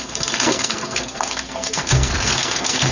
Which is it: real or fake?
fake